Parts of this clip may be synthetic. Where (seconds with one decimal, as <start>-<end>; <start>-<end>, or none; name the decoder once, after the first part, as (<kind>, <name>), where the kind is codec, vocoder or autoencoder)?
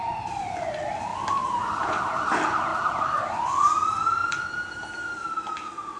none